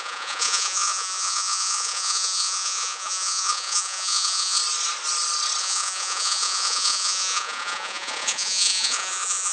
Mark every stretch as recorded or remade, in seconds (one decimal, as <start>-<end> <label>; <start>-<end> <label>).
0.0-4.6 remade; 4.6-5.6 recorded; 5.6-9.5 remade